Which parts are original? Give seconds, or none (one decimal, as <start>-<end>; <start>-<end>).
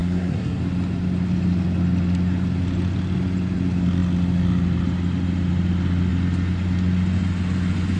0.6-8.0